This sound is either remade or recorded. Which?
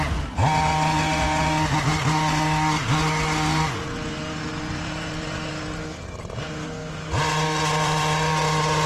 recorded